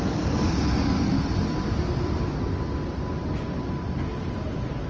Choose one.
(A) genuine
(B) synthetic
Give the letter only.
A